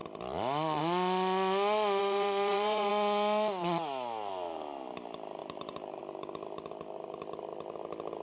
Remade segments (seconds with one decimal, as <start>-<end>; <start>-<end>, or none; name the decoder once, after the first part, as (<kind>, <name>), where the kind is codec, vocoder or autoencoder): 2.0-2.9 (vocoder, BigVGAN v2); 5.4-6.0